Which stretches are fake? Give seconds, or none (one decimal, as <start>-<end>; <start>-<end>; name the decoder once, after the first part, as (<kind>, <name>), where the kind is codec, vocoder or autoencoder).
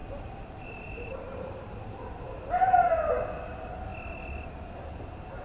0.0-2.9 (vocoder, BigVGAN v2)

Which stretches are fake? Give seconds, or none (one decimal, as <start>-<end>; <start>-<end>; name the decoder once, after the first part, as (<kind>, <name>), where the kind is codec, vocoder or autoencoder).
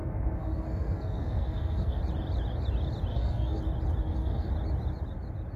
0.0-2.0 (codec, SNAC); 3.1-3.6; 4.0-4.5